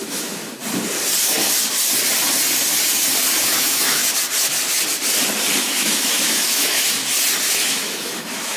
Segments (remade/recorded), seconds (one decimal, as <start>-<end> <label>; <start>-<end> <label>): 0.0-0.6 remade; 0.6-3.4 recorded; 3.4-4.0 remade; 4.0-5.6 recorded; 5.6-7.0 remade; 7.0-7.5 recorded; 7.5-8.6 remade